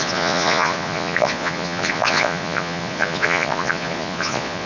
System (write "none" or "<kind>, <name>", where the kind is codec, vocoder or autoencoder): vocoder, Vocos